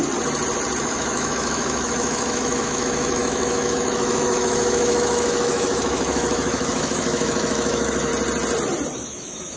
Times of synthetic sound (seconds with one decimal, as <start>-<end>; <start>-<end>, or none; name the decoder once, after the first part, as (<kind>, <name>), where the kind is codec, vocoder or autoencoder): 0.8-8.1 (autoencoder, DAC-VAE); 8.9-9.6